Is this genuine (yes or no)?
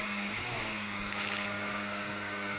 no